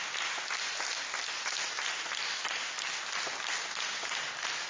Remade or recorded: recorded